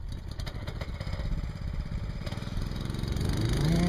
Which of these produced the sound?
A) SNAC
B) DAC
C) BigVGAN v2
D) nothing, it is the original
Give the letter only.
D